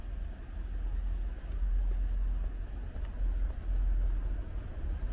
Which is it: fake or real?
real